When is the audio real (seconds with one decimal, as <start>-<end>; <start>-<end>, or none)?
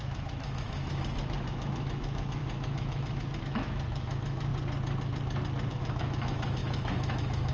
4.5-5.7